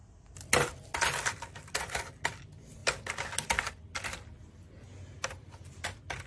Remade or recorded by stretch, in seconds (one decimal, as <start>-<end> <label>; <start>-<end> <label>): 0.0-6.3 recorded